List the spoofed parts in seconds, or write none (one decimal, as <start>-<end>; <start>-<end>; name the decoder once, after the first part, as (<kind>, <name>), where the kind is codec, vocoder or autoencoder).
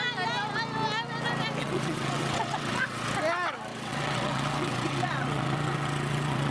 1.6-3.1 (vocoder, WaveNeXt); 3.7-6.5